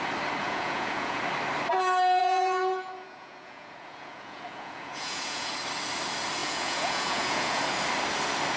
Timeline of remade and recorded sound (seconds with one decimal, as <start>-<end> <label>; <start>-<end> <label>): 0.0-0.4 recorded; 0.4-1.2 remade; 1.2-2.2 recorded; 2.2-5.5 remade; 5.5-6.4 recorded; 6.4-7.6 remade; 7.6-8.6 recorded